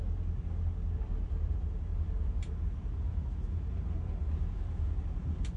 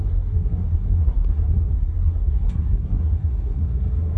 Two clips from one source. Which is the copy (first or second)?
second